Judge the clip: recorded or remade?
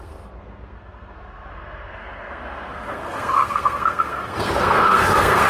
remade